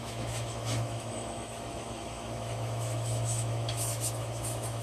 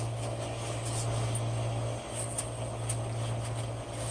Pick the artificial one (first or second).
first